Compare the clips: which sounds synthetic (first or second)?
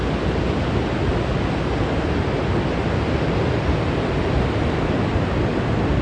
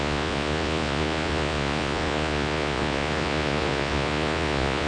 second